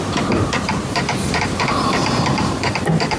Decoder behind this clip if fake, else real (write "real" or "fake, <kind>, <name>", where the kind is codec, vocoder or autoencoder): fake, vocoder, BigVGAN v2